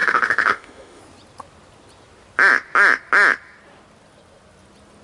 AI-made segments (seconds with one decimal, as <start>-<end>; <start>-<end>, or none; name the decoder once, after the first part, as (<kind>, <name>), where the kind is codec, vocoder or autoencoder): 0.0-1.0 (autoencoder, DAC-VAE)